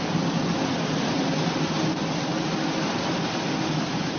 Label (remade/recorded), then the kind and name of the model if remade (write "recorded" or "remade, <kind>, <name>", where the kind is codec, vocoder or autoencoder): recorded